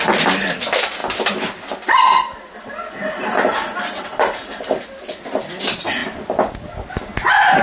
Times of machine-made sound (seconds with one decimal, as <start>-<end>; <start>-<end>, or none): none